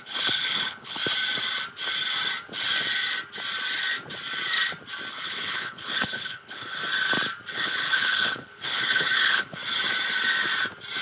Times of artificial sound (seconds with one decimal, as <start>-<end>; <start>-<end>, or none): 0.0-1.0; 5.1-6.8; 7.5-9.6